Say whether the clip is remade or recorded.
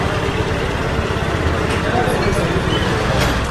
recorded